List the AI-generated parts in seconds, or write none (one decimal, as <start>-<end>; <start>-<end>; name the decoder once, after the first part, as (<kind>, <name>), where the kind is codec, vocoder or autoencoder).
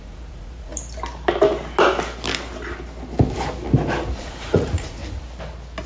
0.0-0.7 (vocoder, Vocos); 4.2-5.0